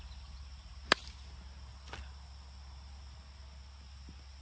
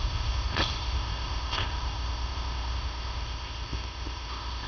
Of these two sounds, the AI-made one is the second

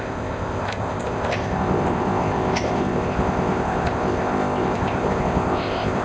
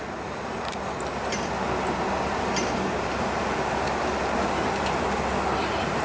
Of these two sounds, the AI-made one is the first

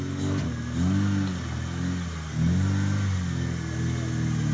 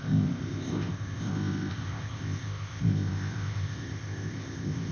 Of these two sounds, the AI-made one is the second